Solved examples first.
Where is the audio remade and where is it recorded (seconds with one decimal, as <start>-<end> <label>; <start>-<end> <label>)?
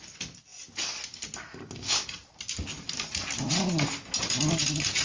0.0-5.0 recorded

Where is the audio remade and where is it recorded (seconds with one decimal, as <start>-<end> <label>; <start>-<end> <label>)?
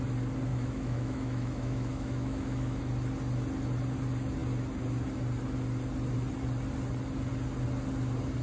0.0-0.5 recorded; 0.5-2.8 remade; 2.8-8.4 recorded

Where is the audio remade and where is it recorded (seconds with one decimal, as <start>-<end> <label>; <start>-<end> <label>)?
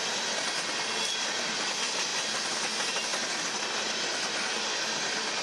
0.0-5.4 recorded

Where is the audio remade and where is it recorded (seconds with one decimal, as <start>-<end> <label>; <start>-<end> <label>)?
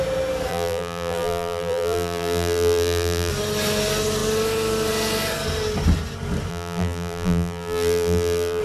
0.0-0.5 recorded; 0.5-3.3 remade; 3.3-6.5 recorded; 6.5-8.6 remade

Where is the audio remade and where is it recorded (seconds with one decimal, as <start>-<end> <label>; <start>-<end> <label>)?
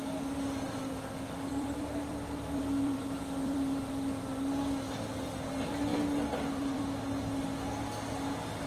0.0-1.5 recorded; 1.5-3.9 remade; 3.9-5.9 recorded; 5.9-6.8 remade; 6.8-8.7 recorded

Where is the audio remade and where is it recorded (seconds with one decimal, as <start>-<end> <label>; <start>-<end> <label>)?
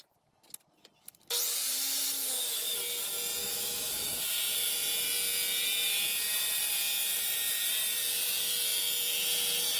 0.0-3.4 recorded; 3.4-4.2 remade; 4.2-9.8 recorded